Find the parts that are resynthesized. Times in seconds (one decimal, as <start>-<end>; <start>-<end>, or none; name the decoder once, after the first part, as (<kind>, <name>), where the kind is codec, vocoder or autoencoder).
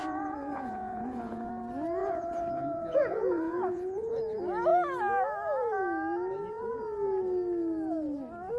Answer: 0.0-1.5 (vocoder, Vocos); 2.0-4.1